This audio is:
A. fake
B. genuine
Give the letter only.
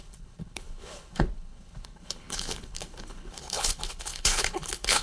A